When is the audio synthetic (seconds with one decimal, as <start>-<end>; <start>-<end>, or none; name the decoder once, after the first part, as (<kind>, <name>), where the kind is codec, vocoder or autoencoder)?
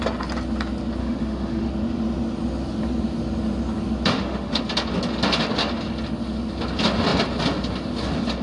1.0-1.7 (autoencoder, DAC-VAE); 4.1-4.6